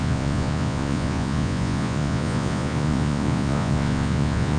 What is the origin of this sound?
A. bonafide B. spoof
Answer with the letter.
B